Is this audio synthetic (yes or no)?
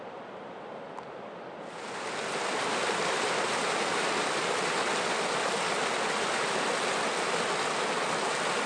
no